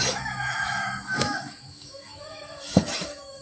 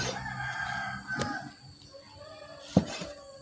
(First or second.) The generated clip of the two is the first